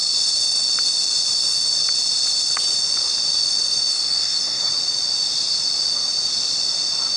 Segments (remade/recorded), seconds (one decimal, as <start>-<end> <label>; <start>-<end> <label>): 0.0-3.9 recorded; 3.9-4.7 remade; 4.7-7.2 recorded